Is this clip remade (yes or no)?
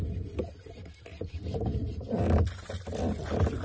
no